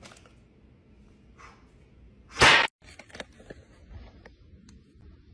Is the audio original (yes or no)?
yes